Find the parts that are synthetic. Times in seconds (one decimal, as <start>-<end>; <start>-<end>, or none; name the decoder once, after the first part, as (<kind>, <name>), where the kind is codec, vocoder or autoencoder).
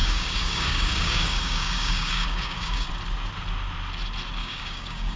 0.0-2.9 (codec, DAC); 4.4-5.2